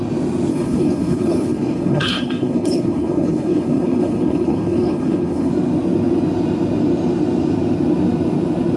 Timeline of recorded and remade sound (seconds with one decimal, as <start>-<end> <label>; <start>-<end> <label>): 0.0-0.5 recorded; 0.5-5.5 remade; 5.5-8.8 recorded